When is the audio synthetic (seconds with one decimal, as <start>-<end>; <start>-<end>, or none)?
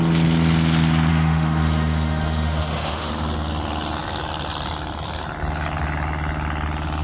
1.1-3.1